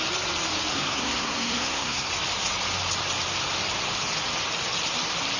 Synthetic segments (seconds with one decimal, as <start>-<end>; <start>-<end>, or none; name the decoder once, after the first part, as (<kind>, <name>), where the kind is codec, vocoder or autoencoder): 0.7-2.1 (codec, SNAC)